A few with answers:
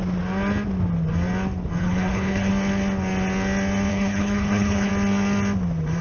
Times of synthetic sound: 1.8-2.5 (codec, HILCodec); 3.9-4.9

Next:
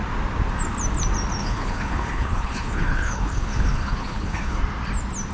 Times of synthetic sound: 1.4-4.6 (codec, HILCodec)

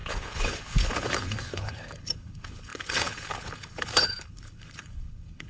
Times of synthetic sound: 0.0-5.5 (codec, HILCodec)

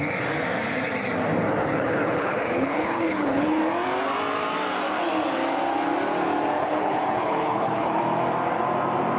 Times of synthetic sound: 1.6-3.6 (codec, HILCodec); 6.6-8.0

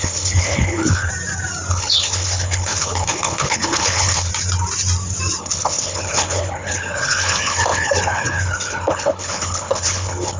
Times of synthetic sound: 0.0-1.1 (codec, HILCodec); 1.7-4.3; 5.4-10.4

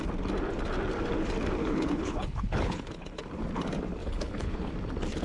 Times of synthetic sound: 1.6-3.2 (codec, HILCodec); 4.0-4.7

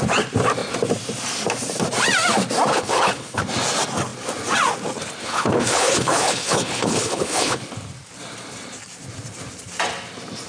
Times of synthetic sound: 2.7-3.4 (codec, HILCodec); 5.2-7.6

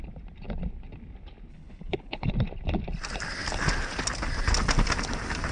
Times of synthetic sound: 1.5-2.3 (codec, HILCodec)